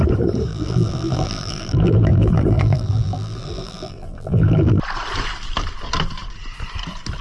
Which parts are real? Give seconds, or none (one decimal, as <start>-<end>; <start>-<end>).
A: 0.0-0.5; 4.8-7.2